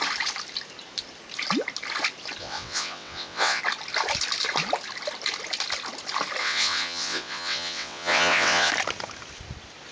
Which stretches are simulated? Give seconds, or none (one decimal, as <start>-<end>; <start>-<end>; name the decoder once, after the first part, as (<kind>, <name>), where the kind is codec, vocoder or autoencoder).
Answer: 2.4-3.6 (vocoder, WaveNeXt); 6.4-8.7